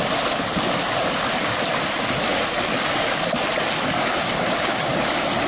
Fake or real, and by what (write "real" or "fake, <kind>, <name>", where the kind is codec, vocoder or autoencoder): real